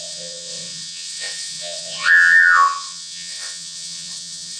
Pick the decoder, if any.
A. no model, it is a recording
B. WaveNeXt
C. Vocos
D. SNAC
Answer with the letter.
B